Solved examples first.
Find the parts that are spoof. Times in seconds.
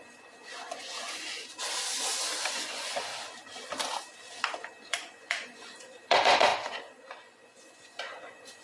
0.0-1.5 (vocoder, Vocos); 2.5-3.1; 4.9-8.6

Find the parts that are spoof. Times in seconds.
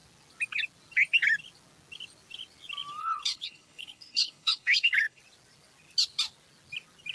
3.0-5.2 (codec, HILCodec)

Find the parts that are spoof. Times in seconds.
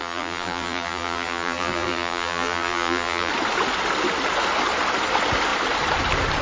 0.0-3.3 (vocoder, BigVGAN v2)